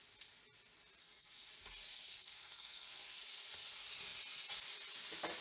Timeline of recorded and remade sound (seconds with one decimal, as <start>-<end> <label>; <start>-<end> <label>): 0.0-1.0 recorded; 1.0-1.5 remade; 1.5-1.9 recorded; 1.9-3.2 remade; 3.2-5.4 recorded